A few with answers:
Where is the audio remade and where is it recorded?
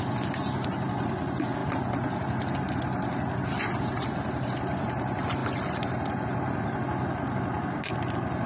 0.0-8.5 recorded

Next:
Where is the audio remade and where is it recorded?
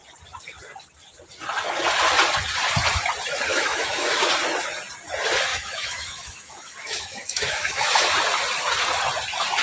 0.0-3.5 recorded; 3.5-4.2 remade; 4.2-5.5 recorded; 5.5-8.0 remade; 8.0-9.6 recorded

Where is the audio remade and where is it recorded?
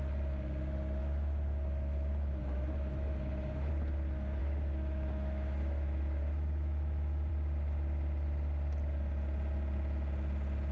0.0-1.0 recorded; 1.0-3.7 remade; 3.7-4.4 recorded; 4.4-7.3 remade; 7.3-10.7 recorded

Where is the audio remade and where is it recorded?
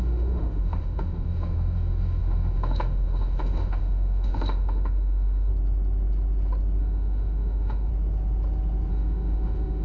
0.0-5.5 remade; 5.5-6.8 recorded; 6.8-7.9 remade; 7.9-8.9 recorded; 8.9-9.8 remade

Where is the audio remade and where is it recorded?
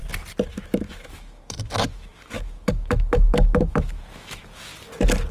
0.0-0.5 recorded; 0.5-4.7 remade; 4.7-5.3 recorded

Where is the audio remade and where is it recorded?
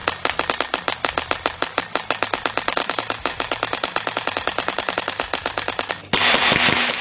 0.0-2.8 recorded; 2.8-5.9 remade; 5.9-7.0 recorded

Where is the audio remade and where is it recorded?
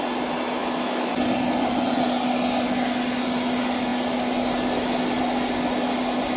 0.0-0.6 recorded; 0.6-1.1 remade; 1.1-6.4 recorded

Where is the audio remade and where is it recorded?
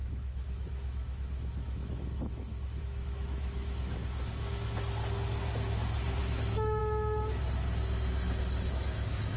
0.0-4.0 remade; 4.0-6.2 recorded; 6.2-6.8 remade; 6.8-8.7 recorded; 8.7-9.4 remade